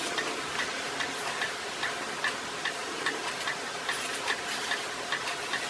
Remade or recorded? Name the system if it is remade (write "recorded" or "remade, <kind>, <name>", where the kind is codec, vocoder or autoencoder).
recorded